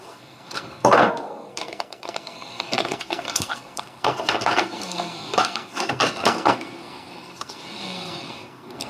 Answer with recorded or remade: remade